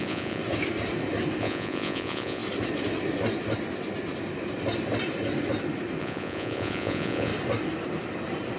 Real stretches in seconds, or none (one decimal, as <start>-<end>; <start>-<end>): 0.4-1.4; 2.4-6.0; 7.3-8.6